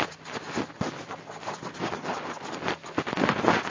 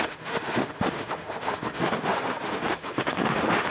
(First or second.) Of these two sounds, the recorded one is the first